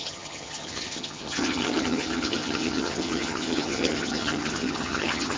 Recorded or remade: remade